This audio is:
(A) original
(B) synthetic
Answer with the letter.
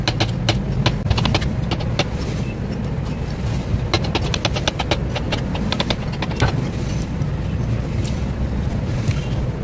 A